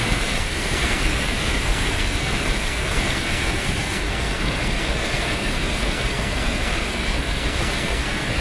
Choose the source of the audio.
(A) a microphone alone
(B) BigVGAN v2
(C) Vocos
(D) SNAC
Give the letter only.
D